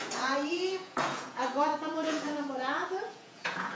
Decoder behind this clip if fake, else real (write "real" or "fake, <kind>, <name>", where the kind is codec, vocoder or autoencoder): fake, vocoder, Vocos